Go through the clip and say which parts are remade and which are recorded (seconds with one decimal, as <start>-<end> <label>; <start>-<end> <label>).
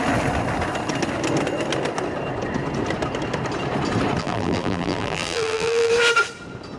0.0-4.2 recorded; 4.2-5.9 remade; 5.9-6.8 recorded